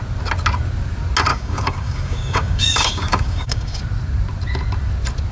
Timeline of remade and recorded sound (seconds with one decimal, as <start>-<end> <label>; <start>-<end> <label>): 0.0-1.3 recorded; 1.3-3.8 remade; 3.8-5.3 recorded